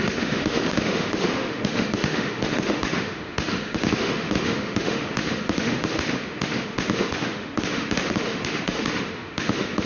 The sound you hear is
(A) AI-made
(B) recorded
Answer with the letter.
A